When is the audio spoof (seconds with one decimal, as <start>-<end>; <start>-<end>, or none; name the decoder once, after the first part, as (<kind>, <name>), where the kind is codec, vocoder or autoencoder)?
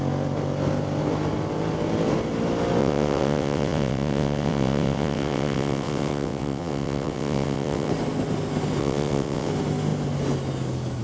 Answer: 2.8-7.9 (vocoder, WaveNeXt); 8.8-9.5